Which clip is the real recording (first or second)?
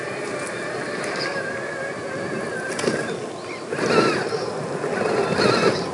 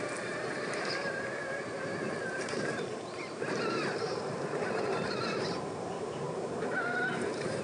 first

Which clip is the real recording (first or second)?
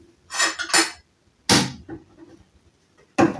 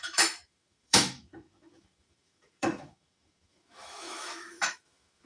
first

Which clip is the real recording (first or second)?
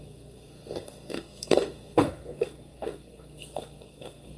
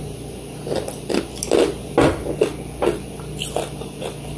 second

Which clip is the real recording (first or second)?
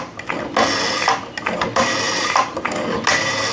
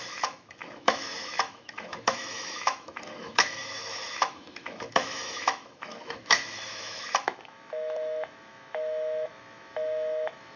first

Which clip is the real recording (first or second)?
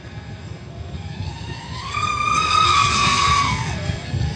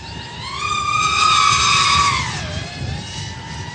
second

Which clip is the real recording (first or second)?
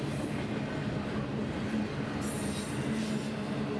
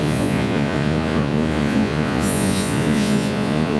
first